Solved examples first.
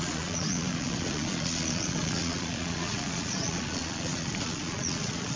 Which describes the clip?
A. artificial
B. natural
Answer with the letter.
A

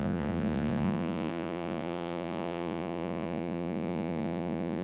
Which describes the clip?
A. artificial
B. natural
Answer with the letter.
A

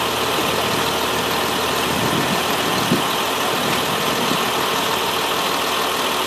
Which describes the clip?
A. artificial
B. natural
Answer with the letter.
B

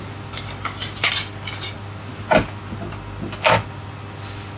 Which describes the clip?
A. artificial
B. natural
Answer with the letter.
B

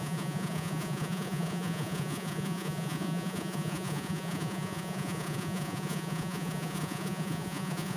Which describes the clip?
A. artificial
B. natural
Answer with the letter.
A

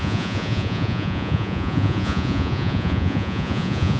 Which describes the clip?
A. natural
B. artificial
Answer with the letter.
B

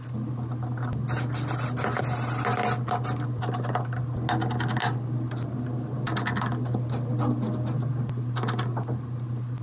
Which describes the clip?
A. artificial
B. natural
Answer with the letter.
B